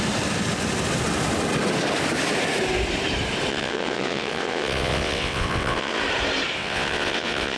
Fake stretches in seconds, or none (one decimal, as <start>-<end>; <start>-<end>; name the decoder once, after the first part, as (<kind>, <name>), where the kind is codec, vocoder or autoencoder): 3.5-6.0 (vocoder, WaveNeXt); 6.6-7.6